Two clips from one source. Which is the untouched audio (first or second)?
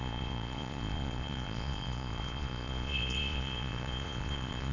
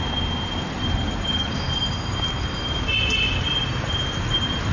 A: second